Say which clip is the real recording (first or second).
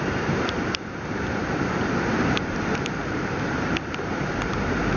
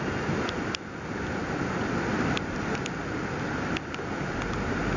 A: second